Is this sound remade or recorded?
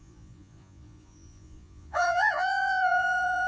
remade